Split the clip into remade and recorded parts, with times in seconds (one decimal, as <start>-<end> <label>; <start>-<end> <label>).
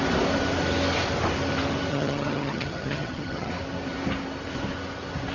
0.0-1.9 recorded; 1.9-3.5 remade; 3.5-5.3 recorded